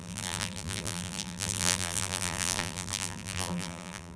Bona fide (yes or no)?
no